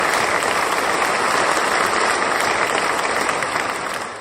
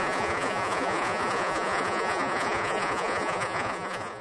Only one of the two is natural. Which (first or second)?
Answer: first